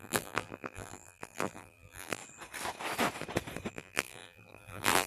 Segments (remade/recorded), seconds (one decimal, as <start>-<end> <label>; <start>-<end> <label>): 0.0-2.2 remade; 2.2-3.7 recorded; 3.7-5.1 remade

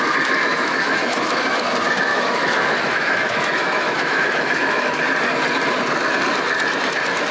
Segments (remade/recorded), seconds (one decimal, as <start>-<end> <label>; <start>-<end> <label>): 0.0-0.5 recorded; 0.5-1.5 remade; 1.5-2.1 recorded; 2.1-5.0 remade; 5.0-7.3 recorded

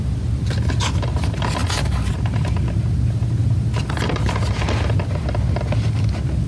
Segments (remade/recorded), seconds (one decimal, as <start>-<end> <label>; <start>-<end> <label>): 0.0-6.5 recorded

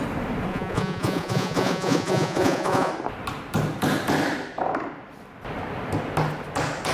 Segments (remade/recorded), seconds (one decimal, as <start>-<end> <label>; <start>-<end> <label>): 0.0-0.5 recorded; 0.5-2.9 remade; 2.9-6.9 recorded